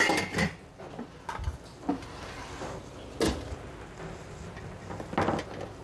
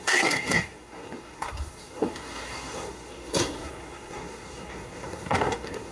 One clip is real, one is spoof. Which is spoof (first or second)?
second